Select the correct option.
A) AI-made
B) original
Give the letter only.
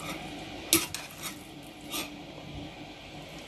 B